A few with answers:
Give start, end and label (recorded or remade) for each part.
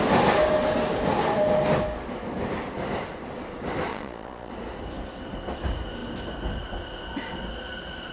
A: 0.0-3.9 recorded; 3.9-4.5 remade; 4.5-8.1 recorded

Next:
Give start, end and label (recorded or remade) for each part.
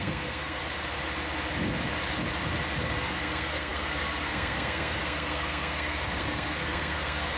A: 0.0-0.6 remade; 0.6-3.0 recorded; 3.0-7.4 remade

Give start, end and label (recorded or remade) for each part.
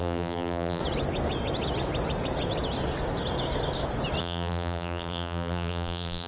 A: 0.0-0.8 remade; 0.8-4.2 recorded; 4.2-6.3 remade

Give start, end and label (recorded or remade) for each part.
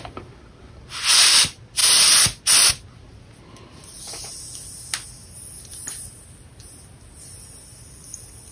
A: 0.0-8.5 recorded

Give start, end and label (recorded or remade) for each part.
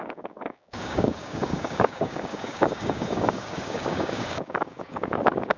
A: 0.0-5.6 remade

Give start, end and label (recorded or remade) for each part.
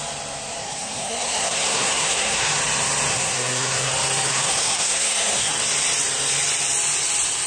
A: 0.0-0.6 recorded; 0.6-2.6 remade; 2.6-3.1 recorded; 3.1-3.9 remade; 3.9-4.3 recorded; 4.3-5.5 remade; 5.5-7.5 recorded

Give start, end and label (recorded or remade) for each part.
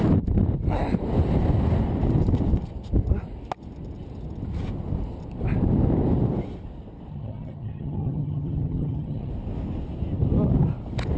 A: 0.0-7.1 recorded; 7.1-9.3 remade; 9.3-11.2 recorded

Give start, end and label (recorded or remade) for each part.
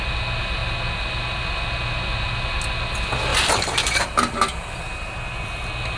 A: 0.0-3.3 recorded; 3.3-4.0 remade; 4.0-6.0 recorded